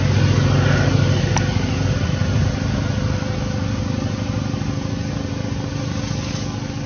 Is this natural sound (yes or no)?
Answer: yes